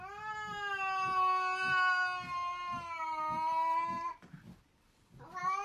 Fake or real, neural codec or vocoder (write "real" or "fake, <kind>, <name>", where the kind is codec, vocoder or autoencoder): real